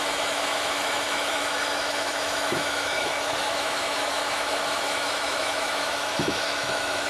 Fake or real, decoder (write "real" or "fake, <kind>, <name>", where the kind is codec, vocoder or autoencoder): fake, autoencoder, DAC-VAE